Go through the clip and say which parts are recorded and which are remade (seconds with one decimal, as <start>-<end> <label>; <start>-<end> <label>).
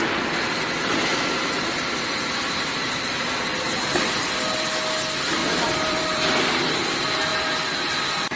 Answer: 0.0-1.1 recorded; 1.1-4.1 remade; 4.1-5.4 recorded; 5.4-6.8 remade; 6.8-8.4 recorded